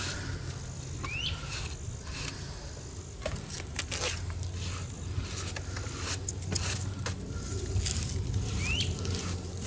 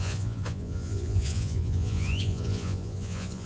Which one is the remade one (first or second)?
second